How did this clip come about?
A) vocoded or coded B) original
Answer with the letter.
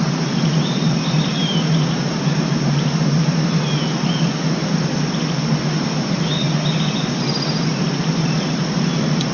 B